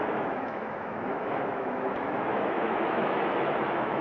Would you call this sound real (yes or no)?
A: no